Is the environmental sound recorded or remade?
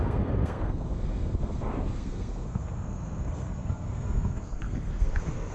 remade